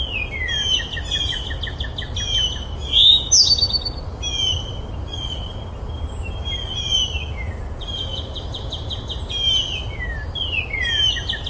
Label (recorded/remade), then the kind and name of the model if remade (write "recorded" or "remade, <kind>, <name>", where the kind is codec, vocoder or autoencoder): recorded